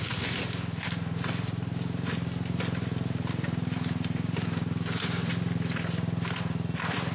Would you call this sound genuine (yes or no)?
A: yes